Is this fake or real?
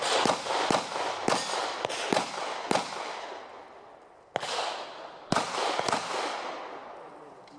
real